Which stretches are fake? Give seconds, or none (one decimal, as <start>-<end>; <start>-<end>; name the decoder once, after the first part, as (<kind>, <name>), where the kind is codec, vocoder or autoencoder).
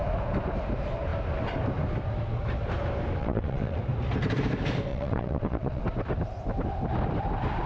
3.2-3.8 (vocoder, WaveNeXt); 4.9-5.8